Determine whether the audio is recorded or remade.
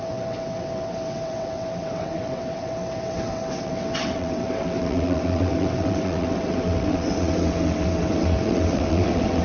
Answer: remade